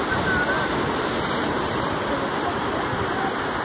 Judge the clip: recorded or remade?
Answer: recorded